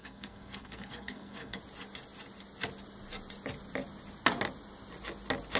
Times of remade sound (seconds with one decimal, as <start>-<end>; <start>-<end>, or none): 0.0-1.6